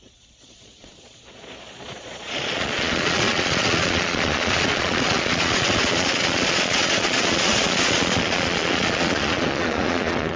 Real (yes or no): no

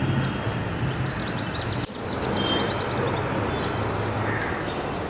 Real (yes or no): yes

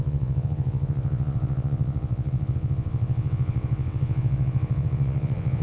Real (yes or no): no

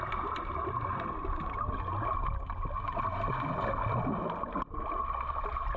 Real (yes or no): yes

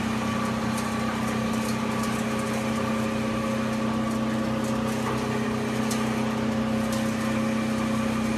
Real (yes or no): yes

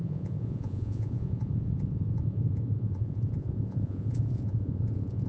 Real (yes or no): no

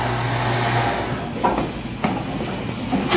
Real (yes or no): yes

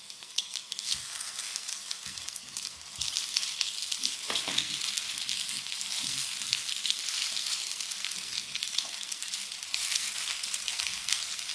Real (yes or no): no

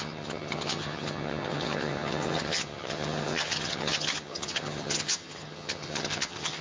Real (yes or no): no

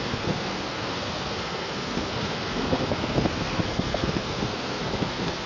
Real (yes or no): no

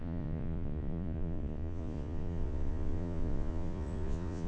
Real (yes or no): no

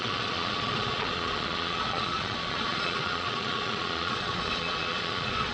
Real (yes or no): no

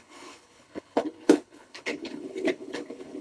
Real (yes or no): no